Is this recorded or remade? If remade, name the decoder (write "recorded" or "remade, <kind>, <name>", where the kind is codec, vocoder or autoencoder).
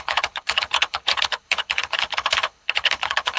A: remade, codec, HILCodec